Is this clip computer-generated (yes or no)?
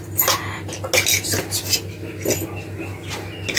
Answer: no